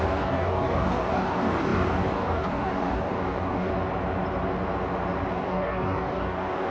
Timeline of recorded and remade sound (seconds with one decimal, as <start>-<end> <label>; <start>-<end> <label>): 0.0-3.7 remade; 3.7-5.3 recorded; 5.3-6.7 remade